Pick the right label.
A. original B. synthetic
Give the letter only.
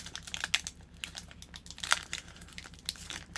A